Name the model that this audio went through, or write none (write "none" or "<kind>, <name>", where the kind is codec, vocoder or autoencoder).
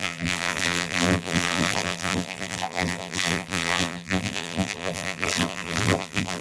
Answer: vocoder, BigVGAN v2